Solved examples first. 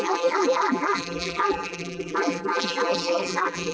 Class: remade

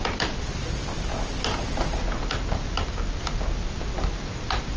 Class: recorded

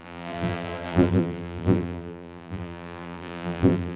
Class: remade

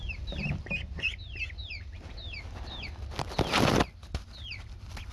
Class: recorded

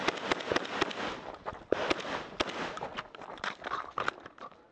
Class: recorded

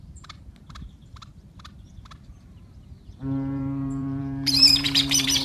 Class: remade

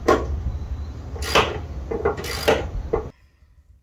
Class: recorded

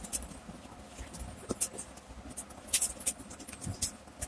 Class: recorded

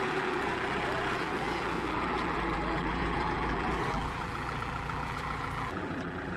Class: remade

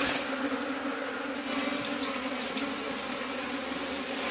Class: recorded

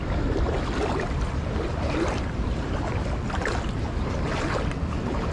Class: recorded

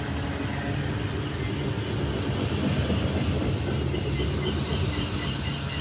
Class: recorded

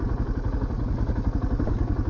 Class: recorded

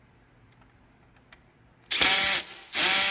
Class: recorded